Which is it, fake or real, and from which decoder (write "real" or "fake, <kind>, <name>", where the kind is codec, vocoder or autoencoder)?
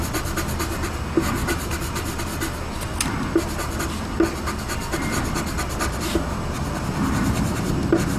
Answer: real